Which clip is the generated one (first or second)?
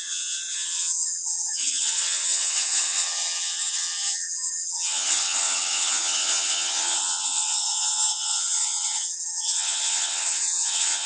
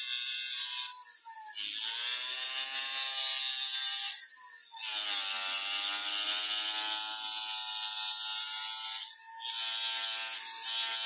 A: first